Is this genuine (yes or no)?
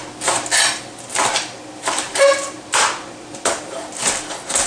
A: yes